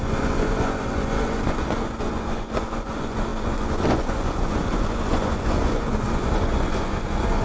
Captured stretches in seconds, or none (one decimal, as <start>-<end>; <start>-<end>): none